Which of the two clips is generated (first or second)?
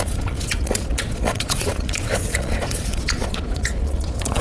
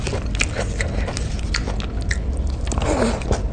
first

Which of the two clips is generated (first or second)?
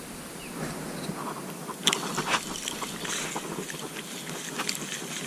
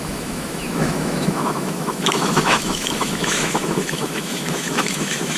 second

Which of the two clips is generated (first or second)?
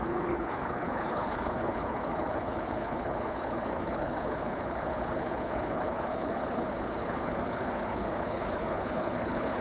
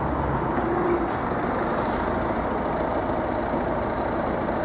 first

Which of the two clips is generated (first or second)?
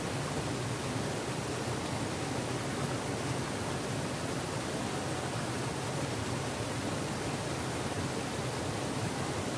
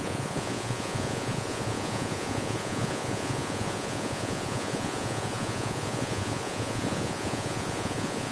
second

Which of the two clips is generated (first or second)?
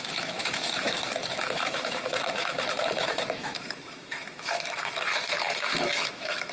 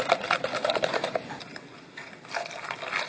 first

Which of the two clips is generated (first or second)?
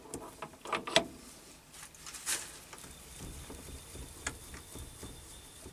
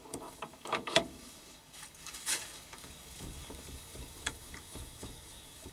second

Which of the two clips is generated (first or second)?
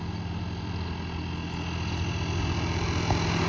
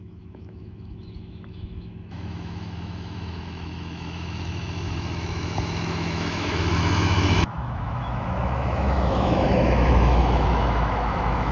second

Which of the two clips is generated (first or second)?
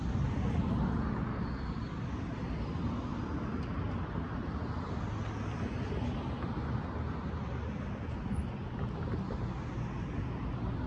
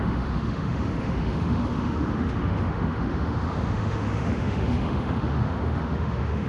second